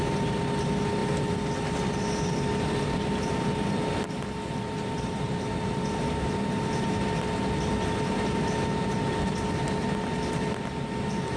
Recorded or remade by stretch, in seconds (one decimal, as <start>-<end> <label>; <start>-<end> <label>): 0.0-11.4 recorded